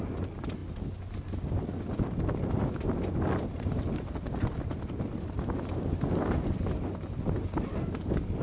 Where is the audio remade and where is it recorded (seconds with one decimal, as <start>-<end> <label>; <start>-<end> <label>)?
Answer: 0.0-8.4 recorded